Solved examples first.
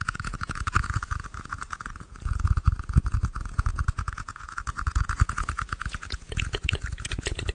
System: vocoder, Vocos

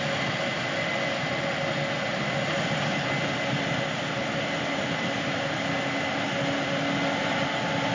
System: none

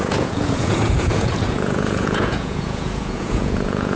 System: vocoder, Vocos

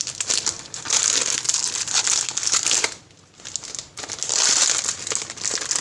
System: none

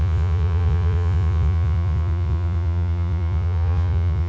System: vocoder, Vocos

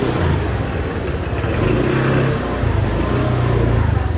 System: none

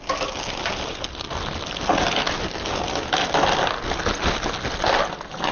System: none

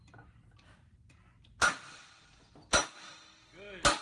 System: none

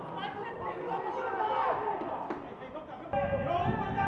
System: none